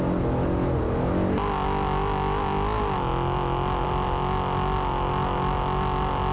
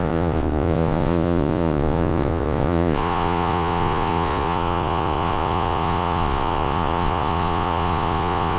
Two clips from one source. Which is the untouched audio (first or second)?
first